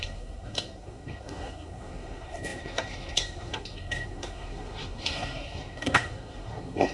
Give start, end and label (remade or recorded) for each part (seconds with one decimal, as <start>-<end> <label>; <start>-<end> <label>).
0.0-6.9 remade